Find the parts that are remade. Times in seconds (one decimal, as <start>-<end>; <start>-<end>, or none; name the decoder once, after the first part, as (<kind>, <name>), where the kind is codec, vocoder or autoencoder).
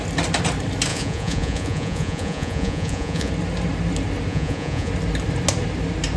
0.9-3.3 (vocoder, Vocos); 4.3-4.9